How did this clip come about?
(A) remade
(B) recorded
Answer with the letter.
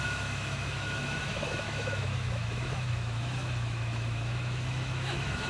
A